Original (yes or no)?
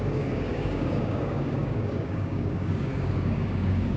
no